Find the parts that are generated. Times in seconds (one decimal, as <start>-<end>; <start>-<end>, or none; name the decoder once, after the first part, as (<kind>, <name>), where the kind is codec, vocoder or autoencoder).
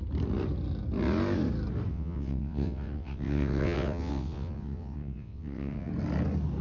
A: 1.9-5.9 (vocoder, WaveNeXt)